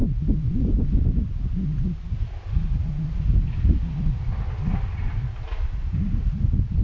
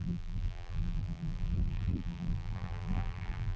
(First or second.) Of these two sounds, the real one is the first